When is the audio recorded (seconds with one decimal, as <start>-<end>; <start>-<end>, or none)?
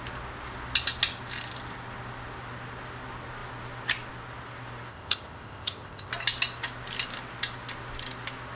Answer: 0.0-4.9; 6.1-8.6